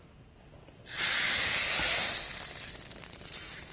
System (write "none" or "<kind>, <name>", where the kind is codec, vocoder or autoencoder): none